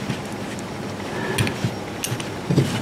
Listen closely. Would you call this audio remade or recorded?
recorded